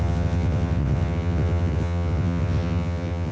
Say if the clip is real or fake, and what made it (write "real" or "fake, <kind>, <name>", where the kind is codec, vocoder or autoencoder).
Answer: fake, vocoder, WaveNeXt